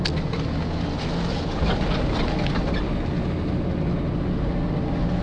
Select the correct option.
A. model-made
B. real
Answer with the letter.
B